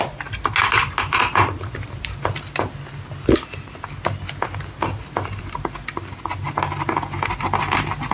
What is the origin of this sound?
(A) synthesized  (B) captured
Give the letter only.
B